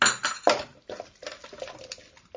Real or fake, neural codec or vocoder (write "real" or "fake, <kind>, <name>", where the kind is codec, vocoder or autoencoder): real